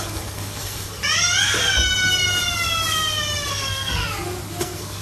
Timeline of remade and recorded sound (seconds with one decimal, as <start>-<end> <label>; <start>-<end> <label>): 0.0-1.0 remade; 1.0-3.5 recorded; 3.5-4.0 remade; 4.0-4.6 recorded; 4.6-5.0 remade

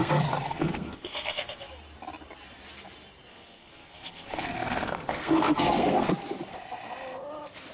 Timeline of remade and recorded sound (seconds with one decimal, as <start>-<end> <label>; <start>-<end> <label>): 0.0-1.7 remade; 1.7-3.3 recorded; 3.3-6.1 remade; 6.1-7.7 recorded